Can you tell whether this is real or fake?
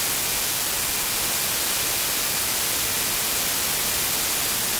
real